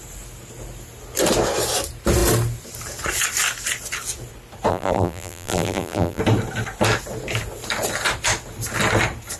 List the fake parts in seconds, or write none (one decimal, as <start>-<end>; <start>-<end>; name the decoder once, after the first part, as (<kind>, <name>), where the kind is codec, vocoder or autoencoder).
4.7-6.2 (vocoder, BigVGAN v2)